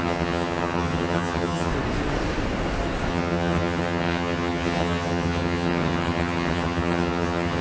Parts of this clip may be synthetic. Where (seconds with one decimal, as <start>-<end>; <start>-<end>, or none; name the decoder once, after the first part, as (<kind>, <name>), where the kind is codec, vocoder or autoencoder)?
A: 0.0-1.7 (vocoder, HiFi-GAN); 3.1-7.6